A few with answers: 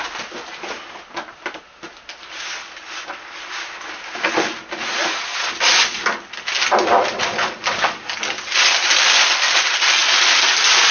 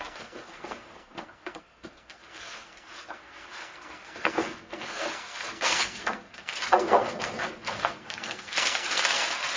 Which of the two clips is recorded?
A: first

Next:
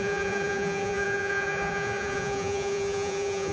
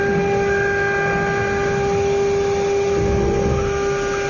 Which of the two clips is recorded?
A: second